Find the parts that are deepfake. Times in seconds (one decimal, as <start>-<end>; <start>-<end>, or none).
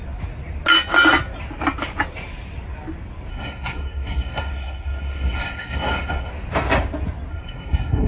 3.3-6.3; 7.3-8.1